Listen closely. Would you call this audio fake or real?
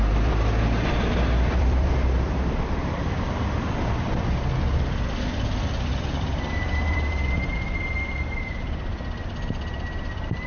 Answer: fake